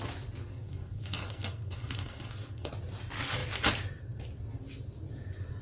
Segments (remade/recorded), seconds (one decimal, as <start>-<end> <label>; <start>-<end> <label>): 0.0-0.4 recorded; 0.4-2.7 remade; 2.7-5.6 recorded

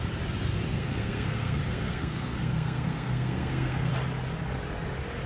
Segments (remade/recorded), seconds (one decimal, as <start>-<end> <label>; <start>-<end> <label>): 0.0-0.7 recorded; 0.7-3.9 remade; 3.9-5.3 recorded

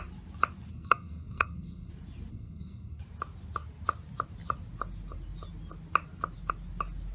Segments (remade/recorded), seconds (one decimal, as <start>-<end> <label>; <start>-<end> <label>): 0.0-0.7 recorded; 0.7-1.9 remade; 1.9-2.3 recorded; 2.3-3.0 remade; 3.0-7.1 recorded

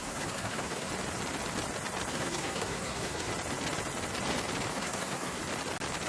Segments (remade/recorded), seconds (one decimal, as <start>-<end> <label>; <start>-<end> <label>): 0.0-0.9 remade; 0.9-2.1 recorded; 2.1-3.3 remade; 3.3-4.7 recorded; 4.7-5.4 remade; 5.4-6.1 recorded

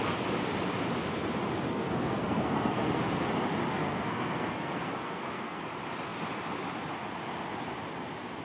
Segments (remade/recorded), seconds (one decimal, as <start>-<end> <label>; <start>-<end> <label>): 0.0-1.7 recorded; 1.7-3.3 remade; 3.3-3.7 recorded; 3.7-5.6 remade; 5.6-8.4 recorded